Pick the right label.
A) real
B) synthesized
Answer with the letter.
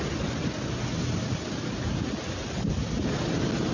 A